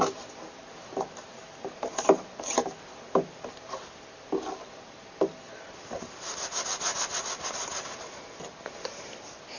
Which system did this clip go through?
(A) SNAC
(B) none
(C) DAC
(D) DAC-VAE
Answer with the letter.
B